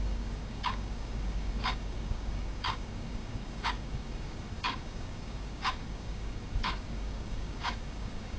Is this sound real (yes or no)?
no